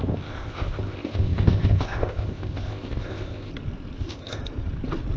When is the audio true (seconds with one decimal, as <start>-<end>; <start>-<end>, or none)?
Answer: 3.5-4.0; 4.4-5.2